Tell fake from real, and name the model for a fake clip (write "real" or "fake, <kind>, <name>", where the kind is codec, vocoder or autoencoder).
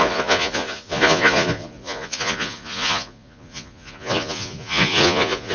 fake, vocoder, Vocos